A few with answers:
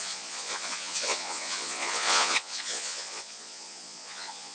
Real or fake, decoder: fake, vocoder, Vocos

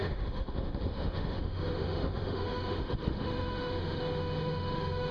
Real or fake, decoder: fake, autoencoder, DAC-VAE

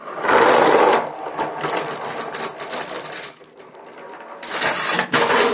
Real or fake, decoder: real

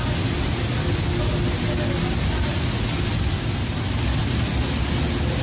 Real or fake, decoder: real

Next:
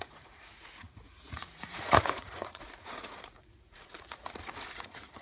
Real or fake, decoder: fake, vocoder, Vocos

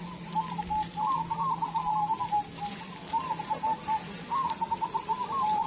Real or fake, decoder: real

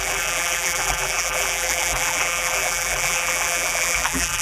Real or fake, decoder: fake, vocoder, BigVGAN v2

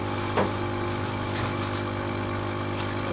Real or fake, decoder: real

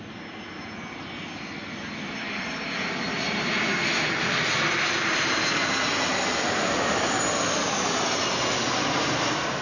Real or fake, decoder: real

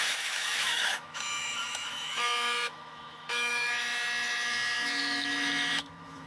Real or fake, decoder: fake, autoencoder, DAC-VAE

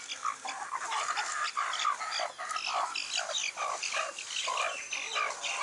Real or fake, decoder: real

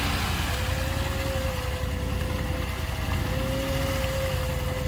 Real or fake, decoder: real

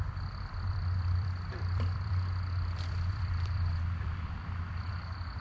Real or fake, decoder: fake, vocoder, BigVGAN v2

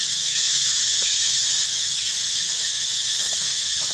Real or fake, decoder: fake, autoencoder, DAC-VAE